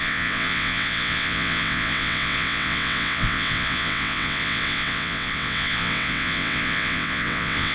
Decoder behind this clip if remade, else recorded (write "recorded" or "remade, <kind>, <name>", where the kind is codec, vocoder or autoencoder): remade, vocoder, WaveNeXt